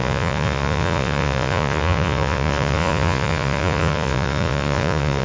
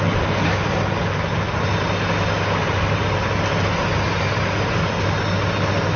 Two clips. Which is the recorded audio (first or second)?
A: second